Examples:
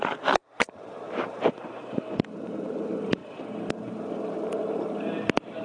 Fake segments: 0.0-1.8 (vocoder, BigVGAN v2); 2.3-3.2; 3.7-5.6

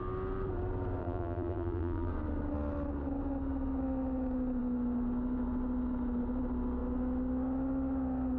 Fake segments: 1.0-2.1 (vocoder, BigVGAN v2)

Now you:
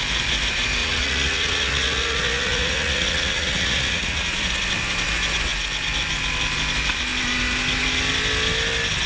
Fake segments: 0.8-4.4 (vocoder, Vocos)

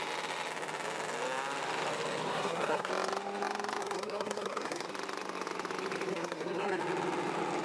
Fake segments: 2.3-2.9 (codec, SNAC); 3.8-4.9; 6.1-6.8

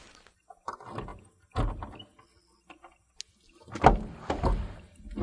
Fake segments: none

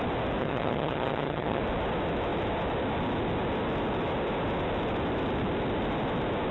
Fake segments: 0.4-1.6 (vocoder, HiFi-GAN)